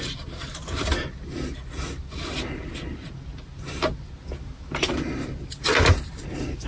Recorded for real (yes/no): yes